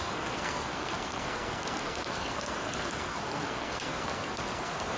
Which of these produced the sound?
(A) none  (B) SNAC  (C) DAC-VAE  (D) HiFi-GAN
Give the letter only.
B